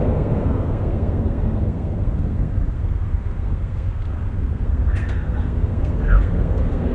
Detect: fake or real fake